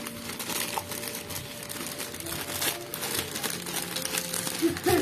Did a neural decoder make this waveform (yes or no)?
no